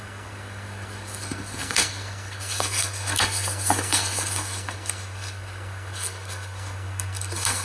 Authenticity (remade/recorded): remade